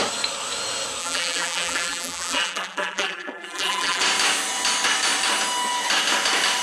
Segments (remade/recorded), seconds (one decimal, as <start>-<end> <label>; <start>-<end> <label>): 0.0-1.0 recorded; 1.0-4.0 remade; 4.0-6.6 recorded